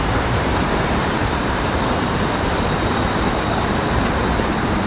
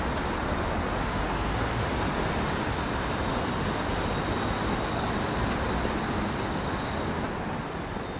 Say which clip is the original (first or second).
second